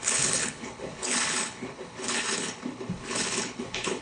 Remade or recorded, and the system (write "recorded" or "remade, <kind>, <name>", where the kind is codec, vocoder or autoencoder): remade, codec, HILCodec